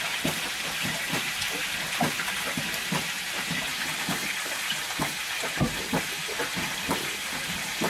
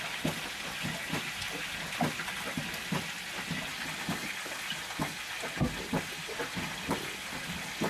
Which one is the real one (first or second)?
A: second